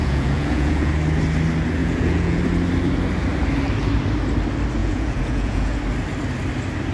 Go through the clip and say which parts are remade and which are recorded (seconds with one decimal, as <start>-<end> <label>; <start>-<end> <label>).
0.0-0.9 remade; 0.9-1.8 recorded; 1.8-2.4 remade; 2.4-4.8 recorded; 4.8-5.8 remade; 5.8-6.9 recorded